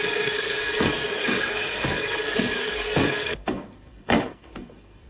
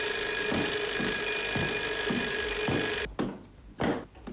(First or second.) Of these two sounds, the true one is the second